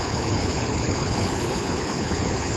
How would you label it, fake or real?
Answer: fake